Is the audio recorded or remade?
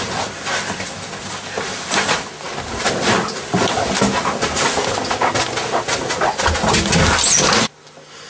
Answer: recorded